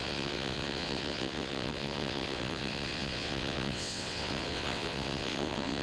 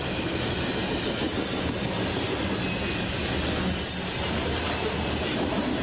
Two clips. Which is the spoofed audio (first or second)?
first